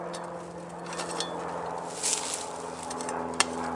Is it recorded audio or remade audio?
recorded